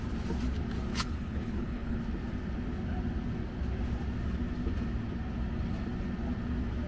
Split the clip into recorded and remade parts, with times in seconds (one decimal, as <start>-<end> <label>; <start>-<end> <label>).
0.0-0.9 recorded; 0.9-2.0 remade; 2.0-6.9 recorded